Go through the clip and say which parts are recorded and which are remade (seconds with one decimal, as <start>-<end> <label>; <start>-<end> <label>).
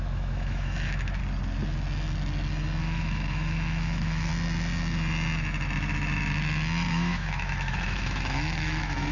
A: 0.0-1.2 remade; 1.2-2.8 recorded; 2.8-4.3 remade; 4.3-6.9 recorded; 6.9-9.1 remade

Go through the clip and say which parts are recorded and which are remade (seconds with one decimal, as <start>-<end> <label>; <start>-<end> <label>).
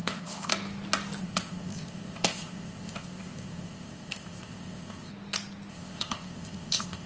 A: 0.0-0.5 remade; 0.5-1.2 recorded; 1.2-5.1 remade; 5.1-5.7 recorded; 5.7-7.1 remade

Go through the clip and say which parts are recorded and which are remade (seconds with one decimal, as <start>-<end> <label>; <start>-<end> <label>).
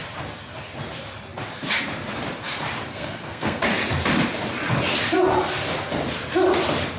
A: 0.0-2.9 recorded; 2.9-3.6 remade; 3.6-7.0 recorded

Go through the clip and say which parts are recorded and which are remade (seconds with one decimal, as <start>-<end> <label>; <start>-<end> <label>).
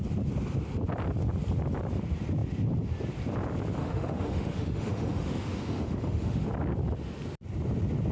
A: 0.0-3.8 recorded; 3.8-6.5 remade; 6.5-8.1 recorded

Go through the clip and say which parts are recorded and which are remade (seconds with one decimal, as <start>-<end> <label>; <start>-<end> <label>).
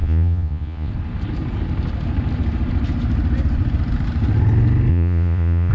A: 0.0-0.9 remade; 0.9-4.9 recorded; 4.9-5.7 remade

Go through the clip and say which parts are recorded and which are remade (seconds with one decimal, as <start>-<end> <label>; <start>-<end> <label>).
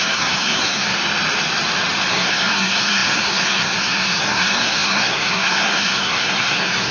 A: 0.0-1.0 remade; 1.0-2.1 recorded; 2.1-6.9 remade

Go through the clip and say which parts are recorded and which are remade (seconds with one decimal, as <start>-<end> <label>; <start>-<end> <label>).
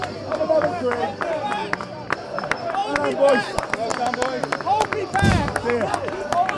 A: 0.0-2.8 remade; 2.8-3.3 recorded; 3.3-3.9 remade; 3.9-6.6 recorded